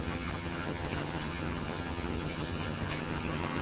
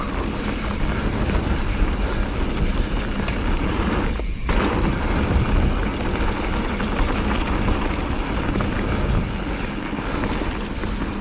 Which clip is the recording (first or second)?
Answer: second